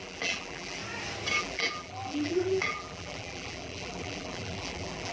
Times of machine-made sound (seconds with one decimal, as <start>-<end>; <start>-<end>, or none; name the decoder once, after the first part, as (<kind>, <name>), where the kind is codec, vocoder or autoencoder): 0.0-0.8 (vocoder, BigVGAN v2); 1.4-5.1